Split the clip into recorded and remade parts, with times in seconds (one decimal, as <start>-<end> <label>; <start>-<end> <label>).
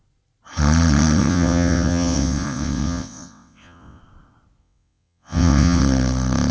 0.0-1.2 recorded; 1.2-4.0 remade; 4.0-4.6 recorded; 4.6-5.8 remade; 5.8-6.5 recorded